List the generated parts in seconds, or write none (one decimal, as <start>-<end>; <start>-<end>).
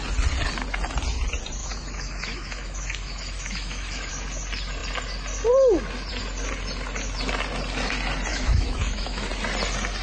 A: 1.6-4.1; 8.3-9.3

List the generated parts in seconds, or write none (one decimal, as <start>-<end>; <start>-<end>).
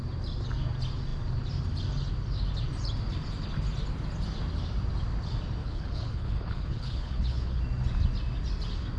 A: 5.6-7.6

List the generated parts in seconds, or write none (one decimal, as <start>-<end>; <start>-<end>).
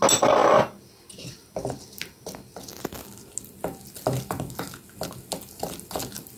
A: none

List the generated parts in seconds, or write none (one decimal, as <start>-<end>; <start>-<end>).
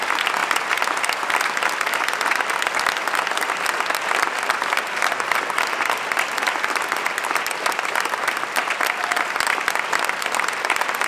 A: none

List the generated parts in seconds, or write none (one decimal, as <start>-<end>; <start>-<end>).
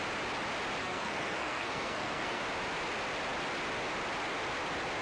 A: 0.8-2.4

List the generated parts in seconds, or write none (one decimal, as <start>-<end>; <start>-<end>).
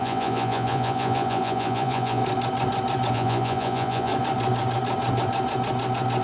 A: 0.0-2.2; 3.1-4.1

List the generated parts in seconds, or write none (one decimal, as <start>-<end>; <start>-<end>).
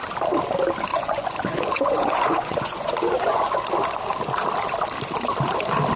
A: 0.9-3.6